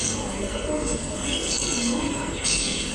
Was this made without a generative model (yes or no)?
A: no